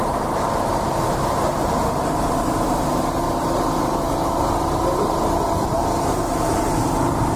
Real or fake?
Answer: fake